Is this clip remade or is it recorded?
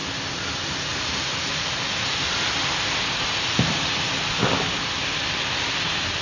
recorded